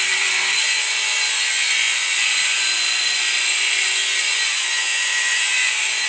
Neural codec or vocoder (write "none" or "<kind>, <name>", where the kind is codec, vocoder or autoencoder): vocoder, Vocos